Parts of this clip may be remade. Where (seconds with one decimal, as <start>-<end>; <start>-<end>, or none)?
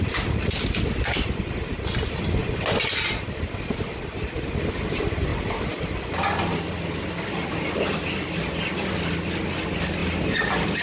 none